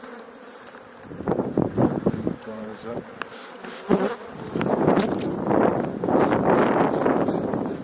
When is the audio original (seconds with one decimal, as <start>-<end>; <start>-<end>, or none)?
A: 2.7-4.3; 5.7-7.1